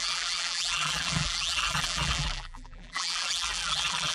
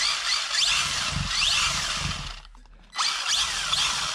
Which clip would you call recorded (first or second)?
second